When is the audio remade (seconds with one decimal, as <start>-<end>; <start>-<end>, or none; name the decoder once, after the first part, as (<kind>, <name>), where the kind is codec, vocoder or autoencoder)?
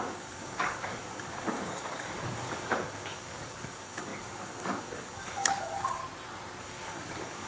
0.0-6.0 (codec, DAC); 6.6-7.5